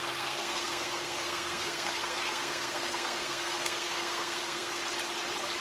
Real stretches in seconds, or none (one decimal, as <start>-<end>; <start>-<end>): 4.8-5.6